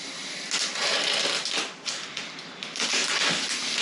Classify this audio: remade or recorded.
recorded